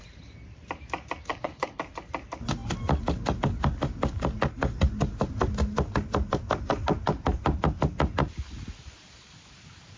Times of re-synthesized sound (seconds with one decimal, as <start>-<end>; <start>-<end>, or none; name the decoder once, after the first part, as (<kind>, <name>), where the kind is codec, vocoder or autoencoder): 1.3-1.8 (codec, HILCodec)